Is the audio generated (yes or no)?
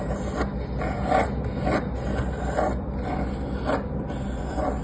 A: no